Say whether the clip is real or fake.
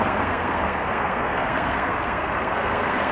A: fake